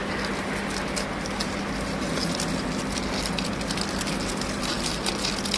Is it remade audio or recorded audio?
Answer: recorded